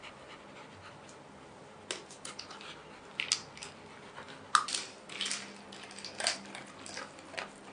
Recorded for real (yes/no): yes